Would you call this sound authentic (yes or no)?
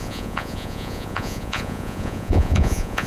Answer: no